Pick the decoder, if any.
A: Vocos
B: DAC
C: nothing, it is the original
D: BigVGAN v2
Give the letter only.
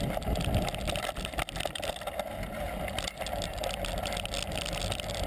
C